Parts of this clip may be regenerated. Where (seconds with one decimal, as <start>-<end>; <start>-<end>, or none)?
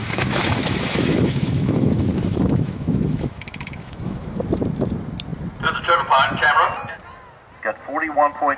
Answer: 0.0-4.4